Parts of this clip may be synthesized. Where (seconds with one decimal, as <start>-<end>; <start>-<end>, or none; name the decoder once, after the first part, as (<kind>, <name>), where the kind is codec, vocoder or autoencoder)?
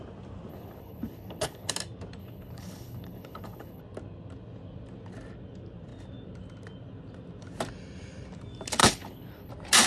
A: 0.5-1.7 (codec, HILCodec); 2.2-3.8; 8.8-9.5